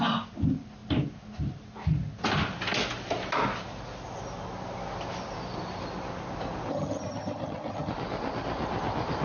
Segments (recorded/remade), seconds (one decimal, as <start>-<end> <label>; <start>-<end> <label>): 0.0-6.7 recorded; 6.7-7.9 remade; 7.9-9.2 recorded